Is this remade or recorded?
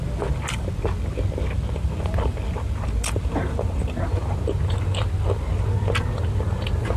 recorded